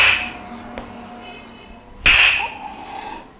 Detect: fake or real real